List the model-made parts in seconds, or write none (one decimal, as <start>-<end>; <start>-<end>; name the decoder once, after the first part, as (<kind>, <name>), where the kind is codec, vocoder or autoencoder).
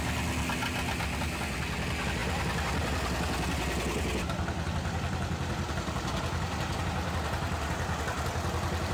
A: none